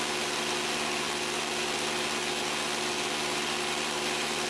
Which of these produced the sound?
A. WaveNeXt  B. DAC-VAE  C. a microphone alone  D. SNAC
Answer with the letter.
C